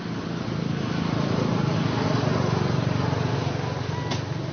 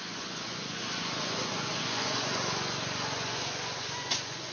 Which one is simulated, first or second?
second